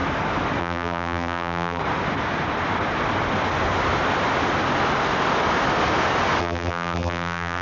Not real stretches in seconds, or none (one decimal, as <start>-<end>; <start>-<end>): 0.6-1.8; 6.4-7.6